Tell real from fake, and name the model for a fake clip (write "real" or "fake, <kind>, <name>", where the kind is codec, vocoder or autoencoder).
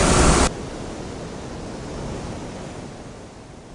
real